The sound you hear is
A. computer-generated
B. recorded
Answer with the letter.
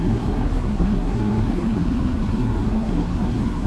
A